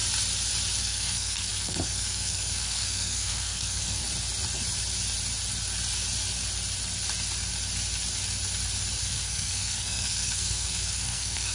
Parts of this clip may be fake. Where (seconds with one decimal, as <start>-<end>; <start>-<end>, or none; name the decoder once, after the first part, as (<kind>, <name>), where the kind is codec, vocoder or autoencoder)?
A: 0.8-4.0 (codec, SNAC); 9.0-11.5